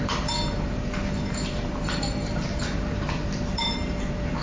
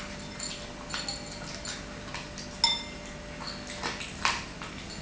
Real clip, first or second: second